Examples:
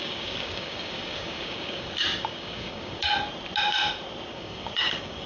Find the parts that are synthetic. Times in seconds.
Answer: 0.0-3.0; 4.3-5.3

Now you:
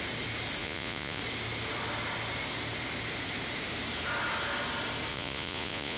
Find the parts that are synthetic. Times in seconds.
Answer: 0.6-1.2; 5.1-6.0